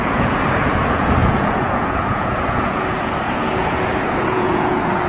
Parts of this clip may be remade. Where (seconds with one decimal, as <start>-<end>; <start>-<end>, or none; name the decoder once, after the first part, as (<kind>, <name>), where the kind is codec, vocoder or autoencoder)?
0.0-5.1 (vocoder, Vocos)

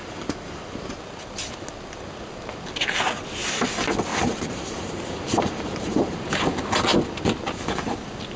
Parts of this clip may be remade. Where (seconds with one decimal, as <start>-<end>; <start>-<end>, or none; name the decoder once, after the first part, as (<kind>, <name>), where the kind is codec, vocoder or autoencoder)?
0.0-0.9 (vocoder, BigVGAN v2); 4.1-6.3

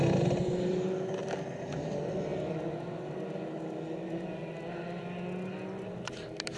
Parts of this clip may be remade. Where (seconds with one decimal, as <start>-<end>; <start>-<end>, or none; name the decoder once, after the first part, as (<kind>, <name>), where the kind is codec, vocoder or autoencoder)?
none